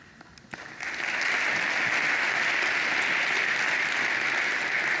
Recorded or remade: recorded